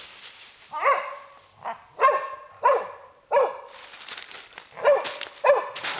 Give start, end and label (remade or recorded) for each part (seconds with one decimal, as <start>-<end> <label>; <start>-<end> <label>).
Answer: 0.0-6.0 recorded